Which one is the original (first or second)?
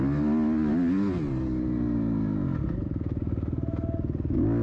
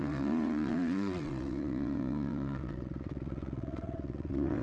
first